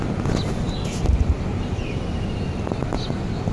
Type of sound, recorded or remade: recorded